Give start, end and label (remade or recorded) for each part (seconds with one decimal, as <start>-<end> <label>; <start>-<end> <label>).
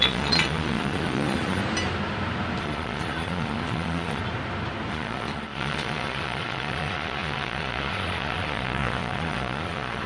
0.0-1.6 remade; 1.6-2.6 recorded; 2.6-4.2 remade; 4.2-4.9 recorded; 4.9-10.1 remade